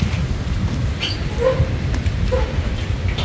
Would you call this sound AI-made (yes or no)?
no